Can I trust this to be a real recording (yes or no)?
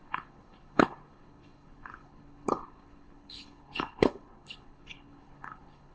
no